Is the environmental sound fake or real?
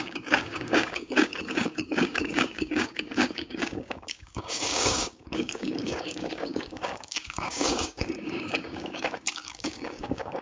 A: fake